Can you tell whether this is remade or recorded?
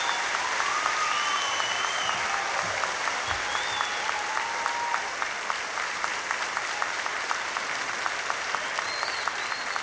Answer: recorded